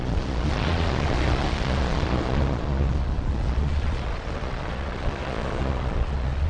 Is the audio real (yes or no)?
no